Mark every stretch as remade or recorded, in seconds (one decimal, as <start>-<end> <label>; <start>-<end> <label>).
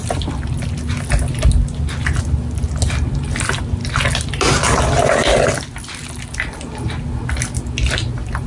0.0-8.5 recorded